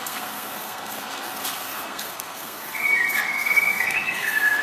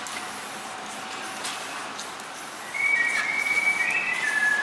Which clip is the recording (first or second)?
second